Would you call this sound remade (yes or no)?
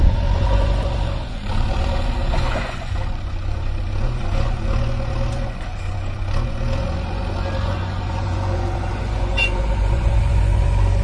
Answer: yes